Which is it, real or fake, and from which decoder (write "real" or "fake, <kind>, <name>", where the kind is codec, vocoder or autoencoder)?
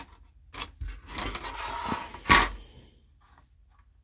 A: real